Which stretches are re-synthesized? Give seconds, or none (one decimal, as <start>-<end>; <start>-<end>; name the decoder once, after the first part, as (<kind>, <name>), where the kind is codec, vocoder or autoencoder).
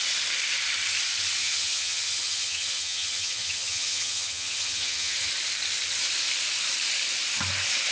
1.4-5.3 (vocoder, HiFi-GAN)